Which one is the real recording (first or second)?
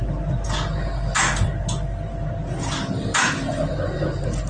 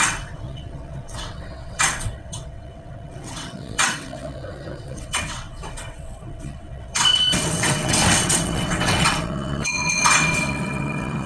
first